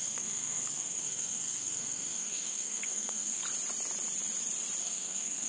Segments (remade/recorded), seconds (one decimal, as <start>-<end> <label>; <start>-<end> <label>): 0.0-3.4 remade; 3.4-4.8 recorded; 4.8-5.5 remade